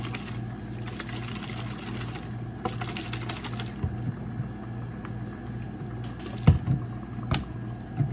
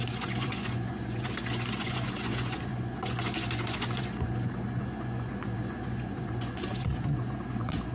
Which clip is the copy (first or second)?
second